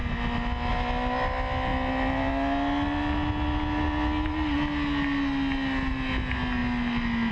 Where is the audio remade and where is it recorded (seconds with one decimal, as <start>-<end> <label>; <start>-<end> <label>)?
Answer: 0.0-7.3 recorded